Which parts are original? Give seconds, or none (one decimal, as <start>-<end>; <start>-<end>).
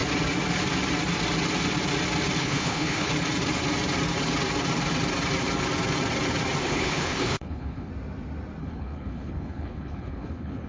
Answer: 0.0-2.4; 3.1-6.6; 7.9-8.6